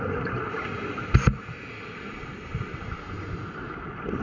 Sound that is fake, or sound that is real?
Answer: real